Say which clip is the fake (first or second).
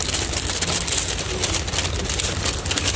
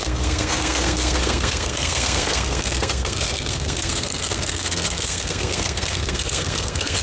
second